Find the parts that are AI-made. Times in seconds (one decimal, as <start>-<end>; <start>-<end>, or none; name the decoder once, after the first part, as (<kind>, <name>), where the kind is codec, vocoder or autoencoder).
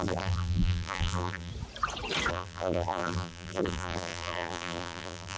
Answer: 0.0-1.5 (vocoder, BigVGAN v2); 2.3-5.4